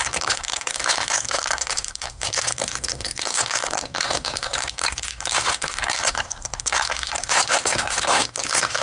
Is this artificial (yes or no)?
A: yes